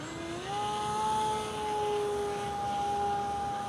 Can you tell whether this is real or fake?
real